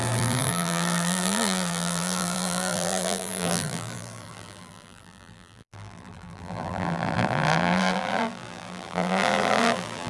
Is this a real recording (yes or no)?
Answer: no